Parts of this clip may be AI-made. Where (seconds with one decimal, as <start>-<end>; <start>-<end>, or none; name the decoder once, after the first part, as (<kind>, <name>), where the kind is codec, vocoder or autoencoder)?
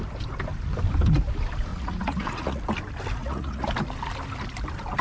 1.7-2.6 (vocoder, Vocos); 3.2-3.7